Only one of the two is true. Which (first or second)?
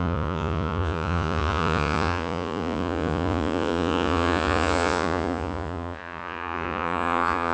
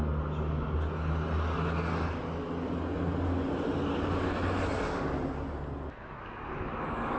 second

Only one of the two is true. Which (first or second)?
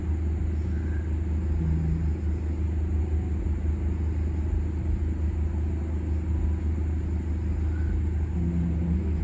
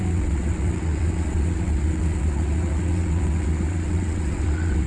first